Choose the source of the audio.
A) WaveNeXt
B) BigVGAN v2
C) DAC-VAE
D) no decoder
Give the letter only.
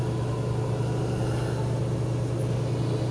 D